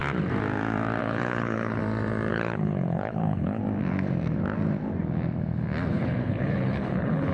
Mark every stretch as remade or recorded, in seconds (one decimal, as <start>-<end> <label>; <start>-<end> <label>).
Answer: 0.0-1.0 recorded; 1.0-1.8 remade; 1.8-2.3 recorded; 2.3-3.6 remade; 3.6-5.9 recorded; 5.9-7.3 remade